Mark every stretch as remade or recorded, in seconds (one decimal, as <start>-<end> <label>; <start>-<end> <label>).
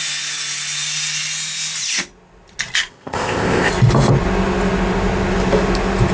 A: 0.0-2.9 recorded; 2.9-3.7 remade; 3.7-6.1 recorded